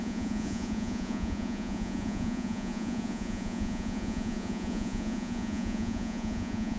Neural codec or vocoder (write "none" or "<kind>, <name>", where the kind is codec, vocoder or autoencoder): vocoder, Vocos